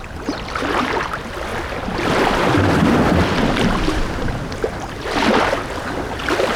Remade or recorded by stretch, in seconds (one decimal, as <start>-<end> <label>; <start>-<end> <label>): 0.0-6.6 recorded